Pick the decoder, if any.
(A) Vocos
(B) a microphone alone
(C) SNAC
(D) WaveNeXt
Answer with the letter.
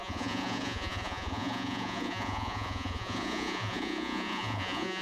A